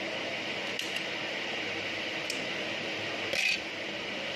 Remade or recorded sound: recorded